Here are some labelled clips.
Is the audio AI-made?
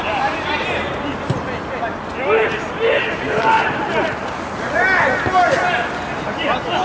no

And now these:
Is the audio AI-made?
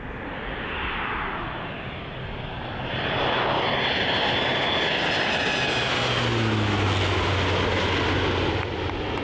no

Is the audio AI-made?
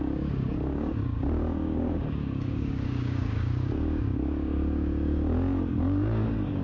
yes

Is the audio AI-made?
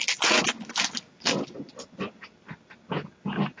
no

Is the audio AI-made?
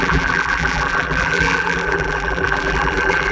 yes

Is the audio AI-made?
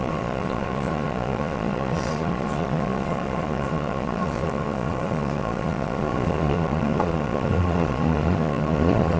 yes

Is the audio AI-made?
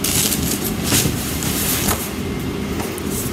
no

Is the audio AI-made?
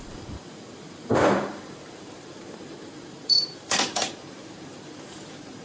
yes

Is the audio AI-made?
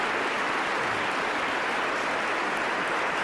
no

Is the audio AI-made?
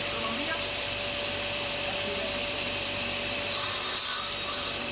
yes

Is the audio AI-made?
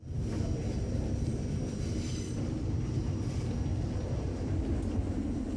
no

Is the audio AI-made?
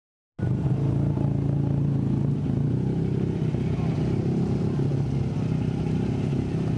no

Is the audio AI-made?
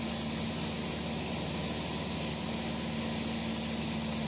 no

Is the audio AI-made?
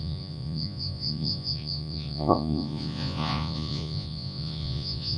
yes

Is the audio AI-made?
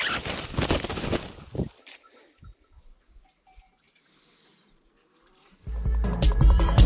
yes